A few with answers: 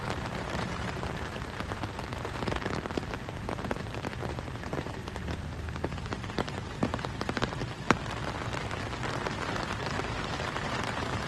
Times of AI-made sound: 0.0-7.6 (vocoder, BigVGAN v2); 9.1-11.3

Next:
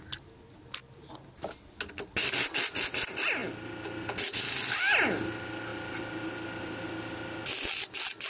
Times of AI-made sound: none